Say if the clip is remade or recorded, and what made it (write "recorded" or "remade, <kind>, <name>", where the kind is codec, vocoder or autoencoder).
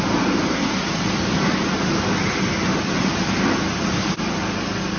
recorded